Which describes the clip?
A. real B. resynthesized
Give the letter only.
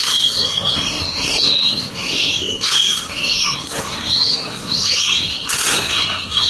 B